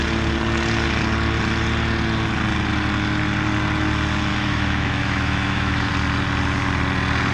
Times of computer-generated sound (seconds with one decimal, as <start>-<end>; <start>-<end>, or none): 4.3-5.9